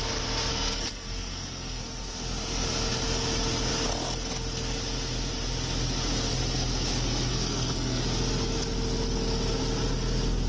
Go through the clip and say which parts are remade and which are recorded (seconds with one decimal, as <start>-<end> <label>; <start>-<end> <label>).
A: 0.0-0.5 recorded; 0.5-1.8 remade; 1.8-7.3 recorded; 7.3-8.0 remade; 8.0-10.5 recorded